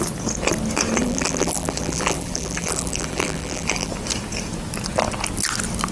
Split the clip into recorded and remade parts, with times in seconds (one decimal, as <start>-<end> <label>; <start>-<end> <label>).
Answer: 0.0-1.0 recorded; 1.0-3.9 remade; 3.9-5.9 recorded